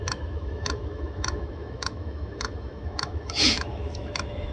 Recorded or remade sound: remade